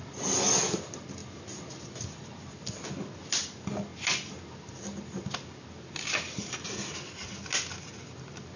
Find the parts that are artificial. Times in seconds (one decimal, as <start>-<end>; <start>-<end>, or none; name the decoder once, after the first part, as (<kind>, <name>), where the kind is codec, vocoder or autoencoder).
none